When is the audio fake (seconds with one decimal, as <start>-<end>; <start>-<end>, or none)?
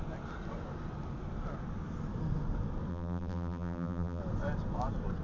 2.9-4.2